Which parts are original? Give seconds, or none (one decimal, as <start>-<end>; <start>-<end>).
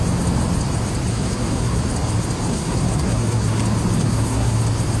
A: 0.0-1.1; 1.8-2.5; 3.6-4.0; 4.6-5.0